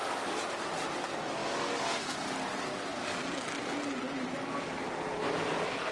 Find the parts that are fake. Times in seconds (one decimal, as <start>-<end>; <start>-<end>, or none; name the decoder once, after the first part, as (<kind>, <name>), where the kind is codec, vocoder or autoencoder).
none